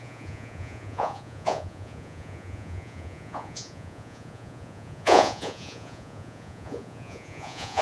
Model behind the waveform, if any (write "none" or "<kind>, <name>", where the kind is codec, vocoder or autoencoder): vocoder, Vocos